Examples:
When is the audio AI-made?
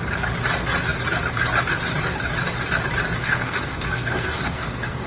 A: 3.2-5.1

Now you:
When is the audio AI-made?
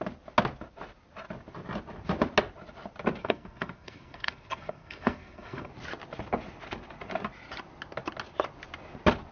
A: 3.2-5.7